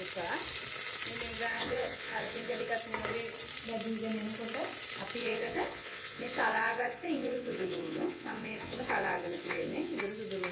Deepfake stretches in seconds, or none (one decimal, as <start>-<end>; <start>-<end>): 1.5-2.7; 5.2-10.0